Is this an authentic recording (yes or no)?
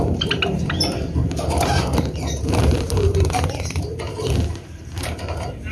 no